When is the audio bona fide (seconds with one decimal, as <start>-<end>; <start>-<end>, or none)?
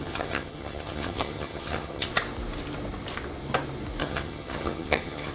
2.1-4.0